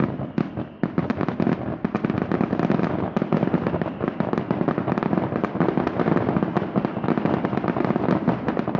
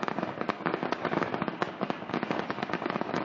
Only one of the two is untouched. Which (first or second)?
first